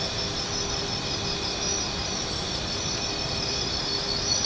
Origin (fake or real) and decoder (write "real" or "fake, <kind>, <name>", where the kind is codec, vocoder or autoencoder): real